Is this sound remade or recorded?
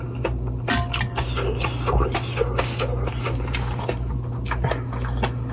recorded